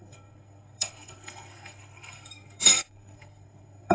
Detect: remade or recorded remade